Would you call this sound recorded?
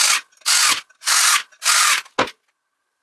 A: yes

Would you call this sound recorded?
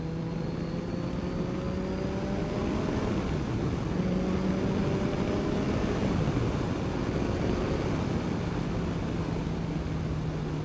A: yes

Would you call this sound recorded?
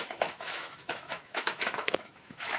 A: no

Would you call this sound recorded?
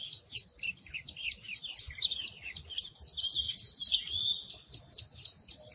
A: yes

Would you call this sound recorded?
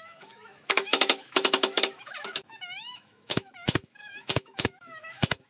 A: no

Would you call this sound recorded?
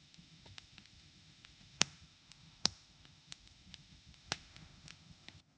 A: no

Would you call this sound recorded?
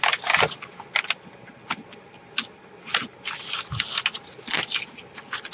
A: yes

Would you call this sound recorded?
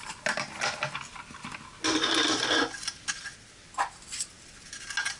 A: yes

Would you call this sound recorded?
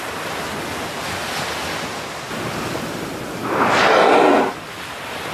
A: yes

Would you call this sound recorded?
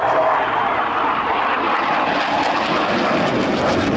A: yes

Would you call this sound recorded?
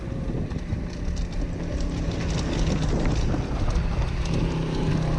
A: yes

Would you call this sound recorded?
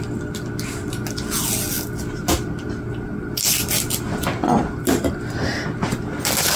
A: yes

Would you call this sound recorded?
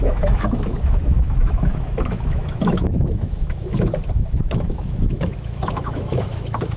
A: no